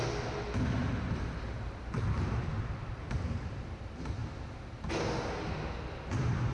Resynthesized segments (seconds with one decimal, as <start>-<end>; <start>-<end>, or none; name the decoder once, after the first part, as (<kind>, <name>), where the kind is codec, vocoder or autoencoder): none